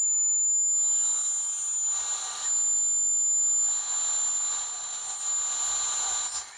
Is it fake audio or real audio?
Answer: real